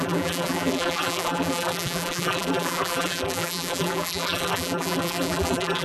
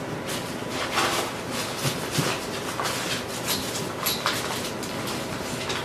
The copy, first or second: first